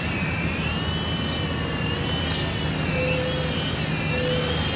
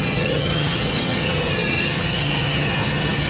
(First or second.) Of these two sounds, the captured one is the first